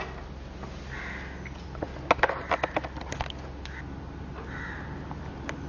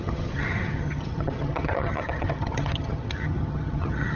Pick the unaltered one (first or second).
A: first